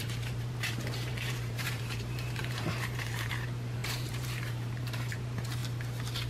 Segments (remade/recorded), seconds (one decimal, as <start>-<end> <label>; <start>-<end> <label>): 0.0-5.6 remade; 5.6-6.3 recorded